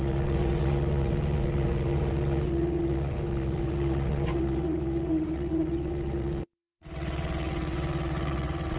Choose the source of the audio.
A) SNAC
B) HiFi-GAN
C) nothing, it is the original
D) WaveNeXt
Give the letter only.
D